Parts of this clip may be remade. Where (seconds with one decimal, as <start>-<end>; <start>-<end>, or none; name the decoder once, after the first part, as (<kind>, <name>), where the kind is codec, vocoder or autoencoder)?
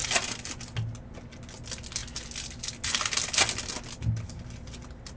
none